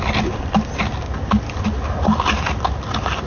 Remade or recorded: recorded